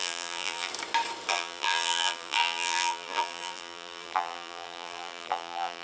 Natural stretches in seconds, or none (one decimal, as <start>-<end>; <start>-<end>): 0.7-1.3

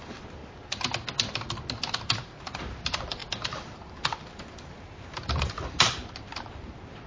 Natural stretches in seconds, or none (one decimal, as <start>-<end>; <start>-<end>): 0.4-1.9

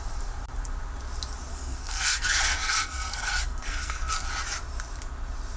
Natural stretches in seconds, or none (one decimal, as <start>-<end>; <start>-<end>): 0.0-1.5; 4.3-5.6

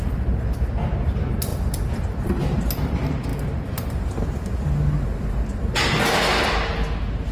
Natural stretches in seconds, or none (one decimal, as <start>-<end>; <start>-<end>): 0.0-7.3